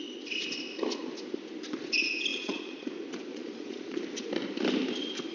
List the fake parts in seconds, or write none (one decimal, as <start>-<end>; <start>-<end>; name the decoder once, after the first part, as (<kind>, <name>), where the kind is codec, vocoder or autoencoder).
2.3-2.9 (vocoder, Vocos); 3.3-4.0